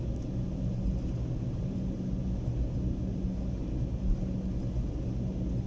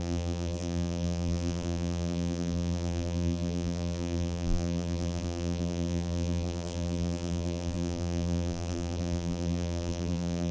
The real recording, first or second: first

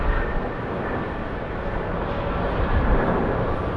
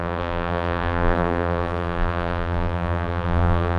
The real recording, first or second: first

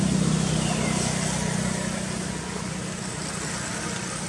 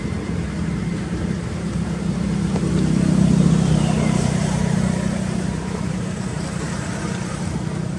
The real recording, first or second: first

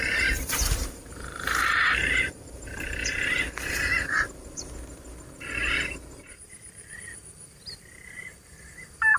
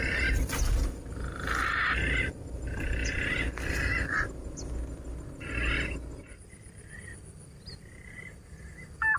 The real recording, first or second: second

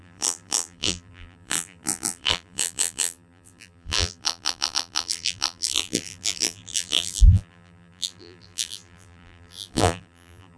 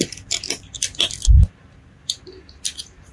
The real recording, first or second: second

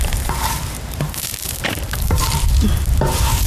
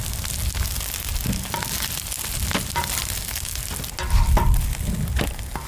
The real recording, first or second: second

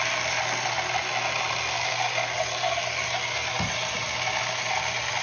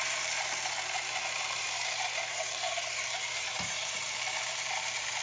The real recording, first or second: first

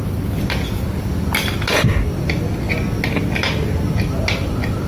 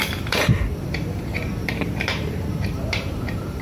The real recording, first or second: first